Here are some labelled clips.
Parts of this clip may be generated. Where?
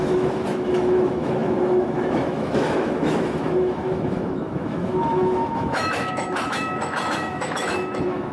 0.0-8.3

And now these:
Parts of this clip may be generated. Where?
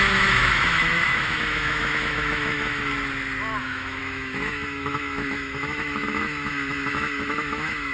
0.0-2.9; 3.6-7.9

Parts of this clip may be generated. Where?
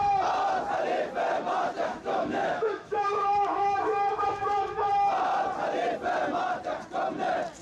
1.9-4.9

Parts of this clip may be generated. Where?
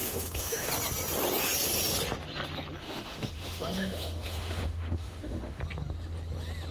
0.0-0.7; 2.8-5.6